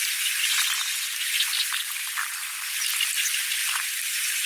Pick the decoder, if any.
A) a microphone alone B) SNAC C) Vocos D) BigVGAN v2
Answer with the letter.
A